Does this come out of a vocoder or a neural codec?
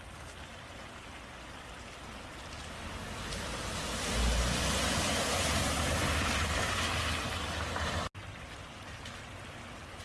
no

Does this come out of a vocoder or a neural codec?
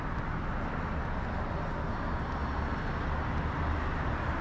no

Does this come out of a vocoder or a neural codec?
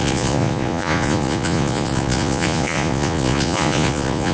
yes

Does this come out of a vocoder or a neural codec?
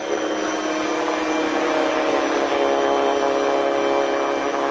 no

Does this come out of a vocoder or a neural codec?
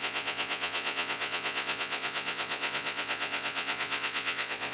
yes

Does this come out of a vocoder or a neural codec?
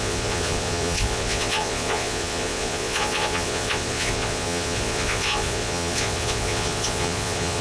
yes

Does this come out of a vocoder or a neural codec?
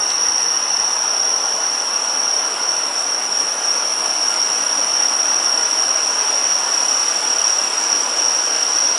no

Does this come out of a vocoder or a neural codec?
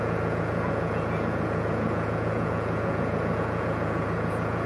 yes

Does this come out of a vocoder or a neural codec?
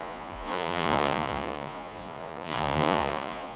yes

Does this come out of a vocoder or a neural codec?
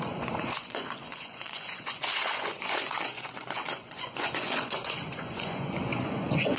yes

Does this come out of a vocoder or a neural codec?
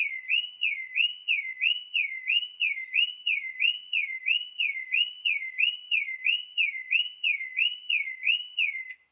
yes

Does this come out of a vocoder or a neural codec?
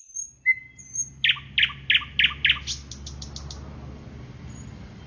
no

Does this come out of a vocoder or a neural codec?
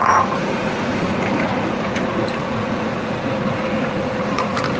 yes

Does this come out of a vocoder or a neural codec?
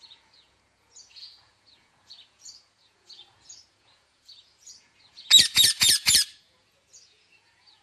yes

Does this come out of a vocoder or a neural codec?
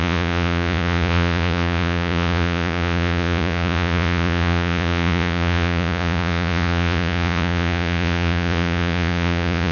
yes